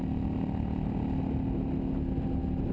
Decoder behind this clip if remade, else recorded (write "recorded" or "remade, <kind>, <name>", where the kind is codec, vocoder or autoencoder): recorded